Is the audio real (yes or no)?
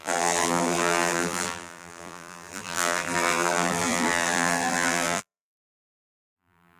no